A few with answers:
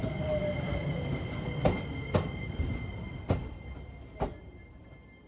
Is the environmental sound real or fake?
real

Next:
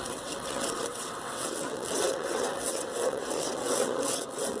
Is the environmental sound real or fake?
fake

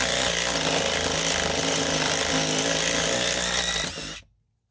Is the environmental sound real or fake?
real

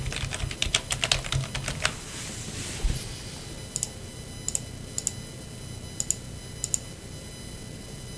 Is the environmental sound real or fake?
real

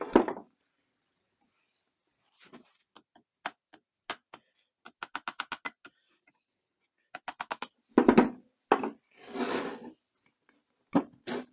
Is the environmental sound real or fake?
real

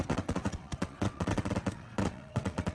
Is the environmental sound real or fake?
fake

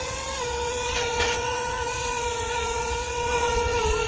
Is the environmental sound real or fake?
fake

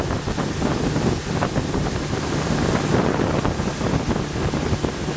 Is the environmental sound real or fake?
real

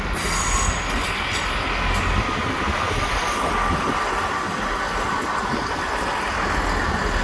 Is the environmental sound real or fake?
real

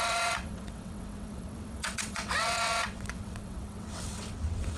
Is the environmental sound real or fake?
fake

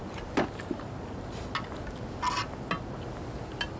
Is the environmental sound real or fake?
real